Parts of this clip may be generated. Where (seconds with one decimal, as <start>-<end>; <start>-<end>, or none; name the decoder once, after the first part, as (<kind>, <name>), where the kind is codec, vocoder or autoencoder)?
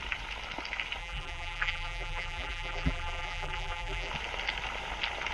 1.0-4.1 (vocoder, BigVGAN v2)